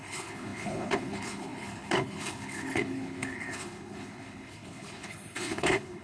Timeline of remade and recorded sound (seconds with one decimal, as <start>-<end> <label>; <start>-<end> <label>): 0.0-6.0 remade